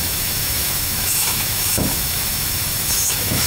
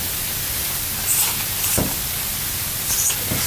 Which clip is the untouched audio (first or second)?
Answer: second